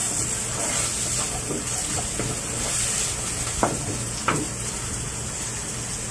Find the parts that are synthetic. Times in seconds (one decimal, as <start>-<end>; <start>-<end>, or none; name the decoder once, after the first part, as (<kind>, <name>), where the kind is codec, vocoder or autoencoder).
0.0-2.0 (vocoder, BigVGAN v2)